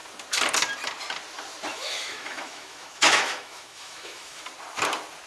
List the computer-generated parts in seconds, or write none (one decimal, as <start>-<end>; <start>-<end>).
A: 1.7-4.4